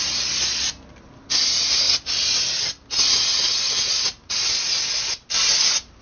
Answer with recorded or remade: recorded